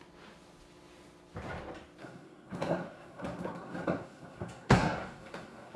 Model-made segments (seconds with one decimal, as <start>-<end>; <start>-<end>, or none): 2.0-5.8

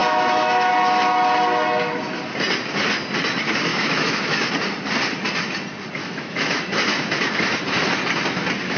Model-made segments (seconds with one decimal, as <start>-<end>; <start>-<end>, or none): 0.0-0.7; 3.7-4.5; 6.0-6.6

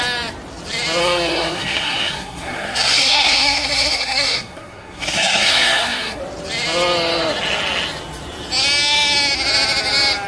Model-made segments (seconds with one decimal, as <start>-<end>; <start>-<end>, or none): 1.0-6.2